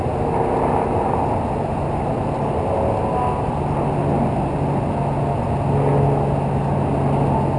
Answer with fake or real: real